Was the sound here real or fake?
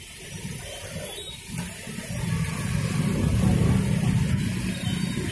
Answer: real